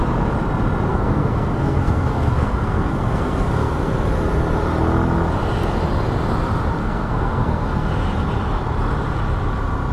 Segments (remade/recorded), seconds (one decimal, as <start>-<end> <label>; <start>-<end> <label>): 0.0-0.9 recorded; 0.9-3.9 remade; 3.9-6.8 recorded; 6.8-7.9 remade; 7.9-9.9 recorded